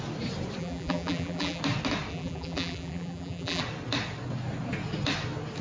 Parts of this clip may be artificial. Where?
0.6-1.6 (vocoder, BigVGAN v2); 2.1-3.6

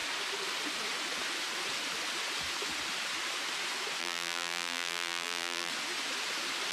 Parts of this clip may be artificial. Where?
4.0-5.7 (vocoder, BigVGAN v2)

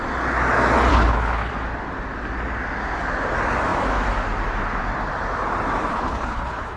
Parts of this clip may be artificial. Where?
0.9-1.5 (codec, HILCodec); 5.9-6.8

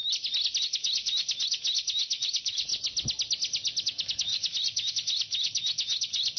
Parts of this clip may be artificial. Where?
0.6-2.7 (autoencoder, DAC-VAE); 3.8-6.4

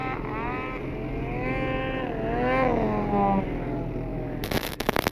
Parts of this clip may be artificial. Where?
4.1-5.1 (autoencoder, DAC-VAE)

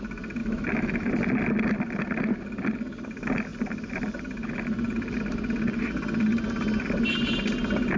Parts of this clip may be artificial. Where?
0.4-1.1 (autoencoder, DAC-VAE)